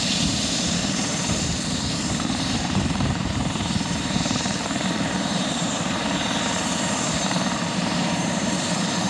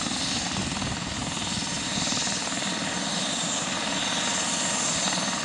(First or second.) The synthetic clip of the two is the first